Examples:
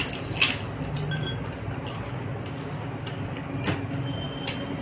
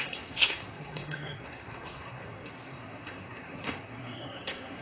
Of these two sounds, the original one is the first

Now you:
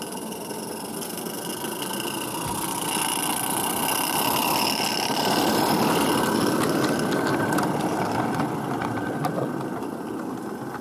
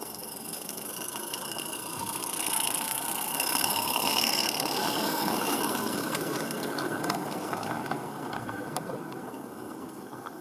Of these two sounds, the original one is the first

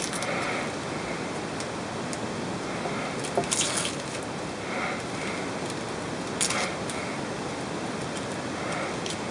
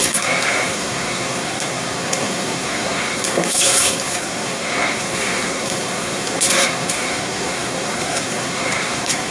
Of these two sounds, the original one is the first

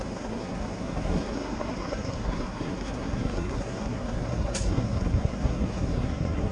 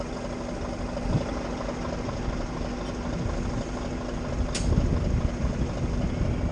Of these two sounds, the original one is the second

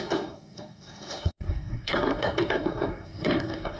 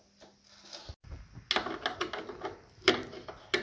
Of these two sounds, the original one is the second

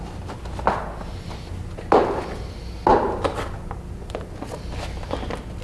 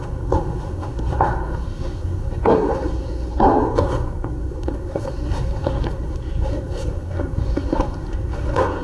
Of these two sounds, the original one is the first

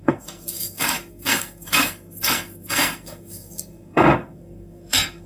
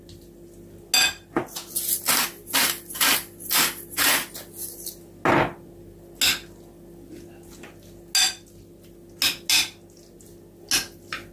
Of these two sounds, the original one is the second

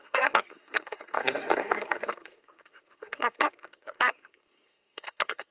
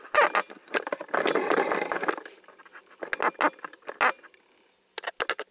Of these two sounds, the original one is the second